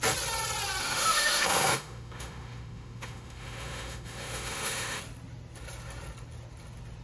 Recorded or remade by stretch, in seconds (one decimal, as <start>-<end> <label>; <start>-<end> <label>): 0.0-0.8 recorded; 0.8-5.0 remade; 5.0-7.0 recorded